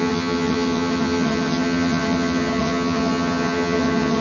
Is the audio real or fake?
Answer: fake